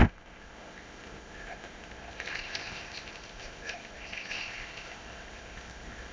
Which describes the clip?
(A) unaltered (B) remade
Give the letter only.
B